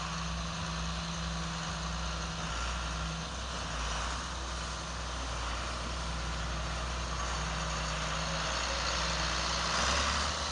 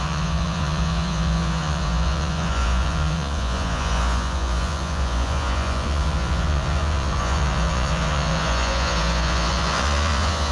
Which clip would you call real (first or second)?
first